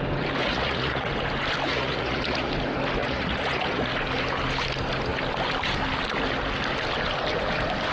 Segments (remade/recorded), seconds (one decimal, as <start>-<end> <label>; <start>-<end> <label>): 0.0-0.4 recorded; 0.4-1.1 remade; 1.1-1.7 recorded; 1.7-2.5 remade; 2.5-3.0 recorded; 3.0-3.9 remade; 3.9-7.9 recorded